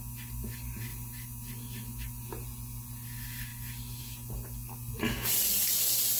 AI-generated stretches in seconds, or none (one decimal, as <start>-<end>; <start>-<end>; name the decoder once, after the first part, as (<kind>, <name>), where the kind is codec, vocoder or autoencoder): 0.9-1.5 (vocoder, BigVGAN v2)